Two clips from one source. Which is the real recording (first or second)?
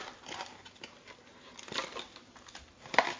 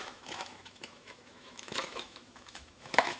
first